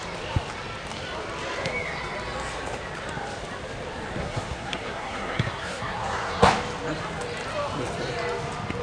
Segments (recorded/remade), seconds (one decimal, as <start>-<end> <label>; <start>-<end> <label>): 0.0-4.2 recorded; 4.2-6.5 remade; 6.5-8.8 recorded